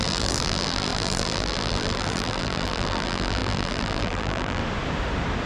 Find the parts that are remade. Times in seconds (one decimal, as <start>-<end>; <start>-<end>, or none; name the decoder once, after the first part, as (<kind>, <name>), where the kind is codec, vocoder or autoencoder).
0.0-4.6 (vocoder, BigVGAN v2)